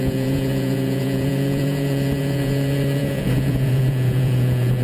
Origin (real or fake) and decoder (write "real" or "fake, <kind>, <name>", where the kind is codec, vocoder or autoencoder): fake, vocoder, Vocos